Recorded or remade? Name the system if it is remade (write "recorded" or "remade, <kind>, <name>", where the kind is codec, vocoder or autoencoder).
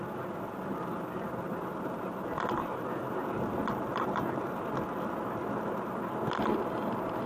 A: recorded